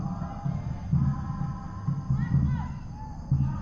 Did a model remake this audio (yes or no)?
no